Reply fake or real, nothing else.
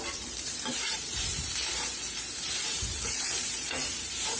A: fake